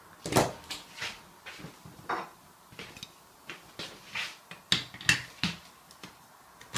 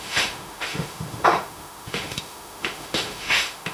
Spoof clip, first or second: second